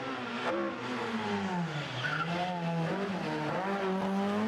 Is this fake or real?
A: real